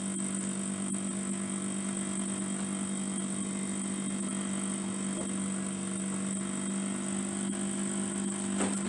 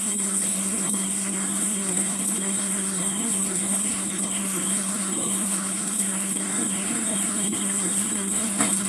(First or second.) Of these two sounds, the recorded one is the first